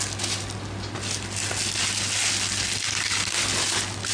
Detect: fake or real real